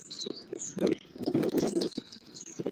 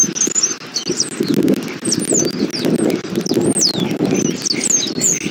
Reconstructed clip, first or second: first